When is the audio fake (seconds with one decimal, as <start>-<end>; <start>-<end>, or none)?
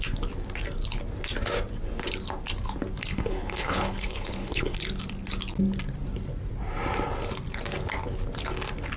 3.0-4.8